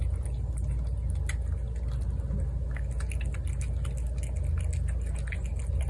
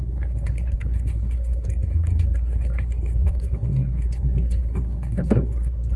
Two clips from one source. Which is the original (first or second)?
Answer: first